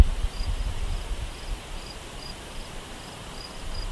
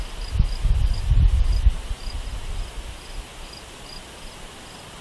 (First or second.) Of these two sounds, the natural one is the second